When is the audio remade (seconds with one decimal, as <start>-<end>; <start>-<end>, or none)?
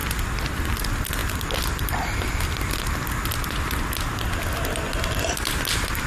none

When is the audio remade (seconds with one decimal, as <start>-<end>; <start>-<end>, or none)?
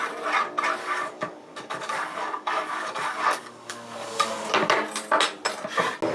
0.8-4.5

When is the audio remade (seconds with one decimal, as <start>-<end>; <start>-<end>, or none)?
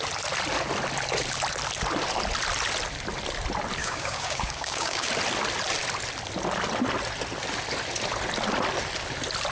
3.8-5.1